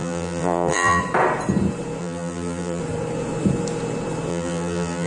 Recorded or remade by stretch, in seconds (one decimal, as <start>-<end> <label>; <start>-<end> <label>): 0.0-1.0 remade; 1.0-2.0 recorded; 2.0-2.8 remade; 2.8-4.3 recorded; 4.3-5.1 remade

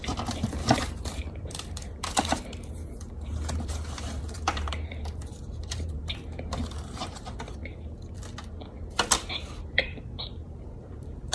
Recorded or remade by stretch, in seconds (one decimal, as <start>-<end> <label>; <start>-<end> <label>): 0.0-7.6 remade; 7.6-9.2 recorded; 9.2-11.3 remade

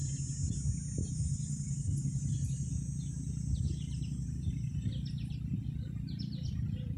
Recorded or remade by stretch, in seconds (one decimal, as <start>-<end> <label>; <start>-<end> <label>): 0.0-1.1 recorded; 1.1-2.7 remade; 2.7-3.6 recorded; 3.6-7.0 remade

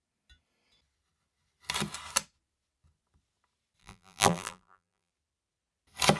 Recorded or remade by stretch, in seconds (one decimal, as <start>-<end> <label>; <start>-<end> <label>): 0.0-3.8 recorded; 3.8-5.1 remade; 5.1-6.2 recorded

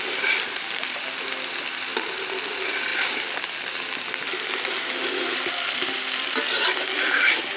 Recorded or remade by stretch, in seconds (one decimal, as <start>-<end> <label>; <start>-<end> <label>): 0.0-2.9 remade; 2.9-4.7 recorded; 4.7-7.6 remade

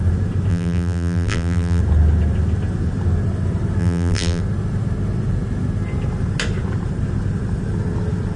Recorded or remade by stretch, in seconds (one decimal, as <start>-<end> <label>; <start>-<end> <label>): 0.0-0.5 recorded; 0.5-1.8 remade; 1.8-3.8 recorded; 3.8-4.4 remade; 4.4-8.4 recorded